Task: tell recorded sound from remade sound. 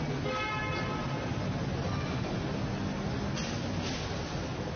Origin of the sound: recorded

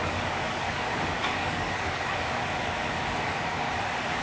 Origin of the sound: remade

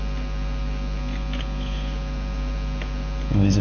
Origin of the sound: recorded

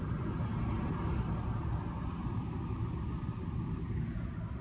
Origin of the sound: recorded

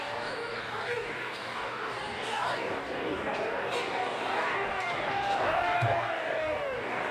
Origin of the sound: remade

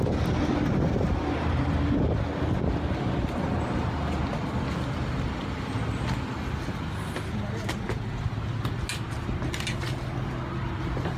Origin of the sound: recorded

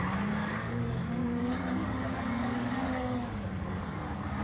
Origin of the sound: remade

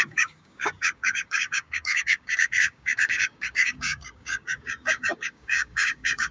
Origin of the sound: remade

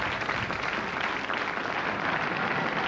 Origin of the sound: recorded